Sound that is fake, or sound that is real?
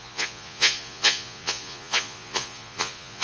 fake